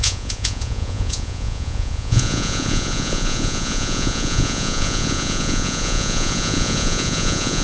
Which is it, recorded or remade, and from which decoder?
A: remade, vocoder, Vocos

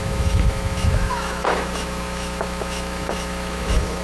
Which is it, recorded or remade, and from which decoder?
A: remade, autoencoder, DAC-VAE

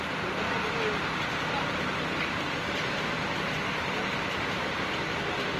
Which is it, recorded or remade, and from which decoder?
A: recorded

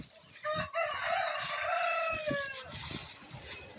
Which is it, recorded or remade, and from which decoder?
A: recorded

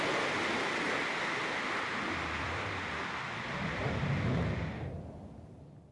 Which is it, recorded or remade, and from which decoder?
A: recorded